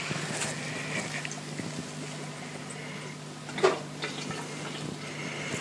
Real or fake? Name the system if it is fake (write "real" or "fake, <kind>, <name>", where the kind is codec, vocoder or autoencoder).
real